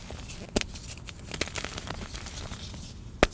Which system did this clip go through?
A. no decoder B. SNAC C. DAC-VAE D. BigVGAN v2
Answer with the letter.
A